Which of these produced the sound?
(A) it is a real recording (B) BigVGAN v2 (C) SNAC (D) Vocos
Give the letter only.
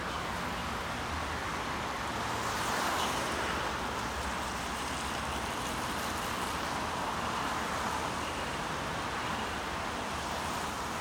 A